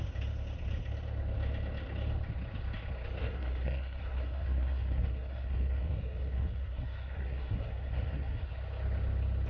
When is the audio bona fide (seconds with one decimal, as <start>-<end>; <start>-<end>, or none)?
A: 0.0-3.2; 8.5-9.5